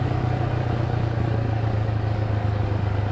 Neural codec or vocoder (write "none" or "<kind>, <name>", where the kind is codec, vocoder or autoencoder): codec, DAC